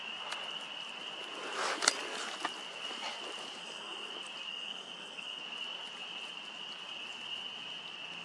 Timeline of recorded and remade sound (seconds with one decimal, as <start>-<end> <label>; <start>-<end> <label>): 0.0-3.6 recorded; 3.6-4.1 remade; 4.1-4.5 recorded; 4.5-5.4 remade; 5.4-8.2 recorded